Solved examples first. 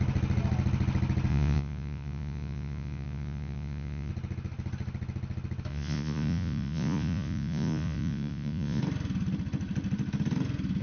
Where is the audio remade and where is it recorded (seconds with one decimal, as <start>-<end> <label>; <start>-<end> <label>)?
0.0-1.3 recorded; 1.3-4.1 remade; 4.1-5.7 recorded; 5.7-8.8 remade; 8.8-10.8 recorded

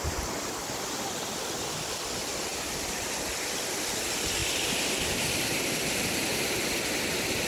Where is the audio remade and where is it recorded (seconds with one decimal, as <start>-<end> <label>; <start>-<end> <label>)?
0.0-2.5 recorded; 2.5-3.1 remade; 3.1-4.4 recorded; 4.4-6.2 remade; 6.2-7.5 recorded

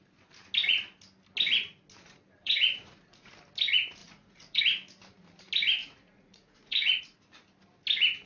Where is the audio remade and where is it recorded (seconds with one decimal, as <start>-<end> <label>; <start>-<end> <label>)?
0.0-2.4 recorded; 2.4-3.3 remade; 3.3-4.0 recorded; 4.0-4.6 remade; 4.6-5.8 recorded; 5.8-7.0 remade; 7.0-8.3 recorded